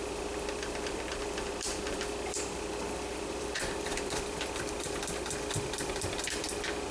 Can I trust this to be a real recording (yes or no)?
no